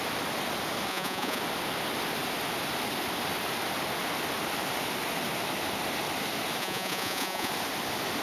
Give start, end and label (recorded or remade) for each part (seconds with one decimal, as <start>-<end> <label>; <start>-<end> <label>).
0.0-0.9 recorded; 0.9-1.4 remade; 1.4-6.6 recorded; 6.6-7.5 remade; 7.5-8.2 recorded